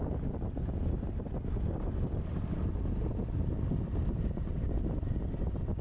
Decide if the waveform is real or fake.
real